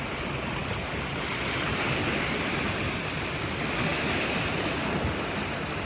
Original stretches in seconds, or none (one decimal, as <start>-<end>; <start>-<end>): 0.0-3.9; 4.9-5.9